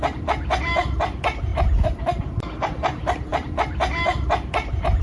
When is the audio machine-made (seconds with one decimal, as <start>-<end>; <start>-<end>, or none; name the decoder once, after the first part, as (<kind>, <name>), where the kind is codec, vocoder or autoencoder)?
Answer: 0.0-1.5 (vocoder, BigVGAN v2); 2.0-5.0